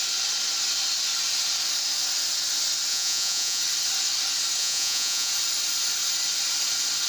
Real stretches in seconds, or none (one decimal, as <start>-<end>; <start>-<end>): 0.0-2.9; 3.6-4.6; 5.3-7.1